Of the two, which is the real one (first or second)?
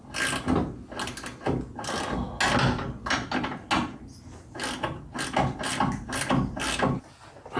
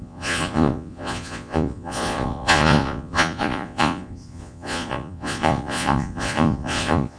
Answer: first